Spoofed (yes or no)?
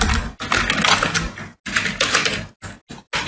no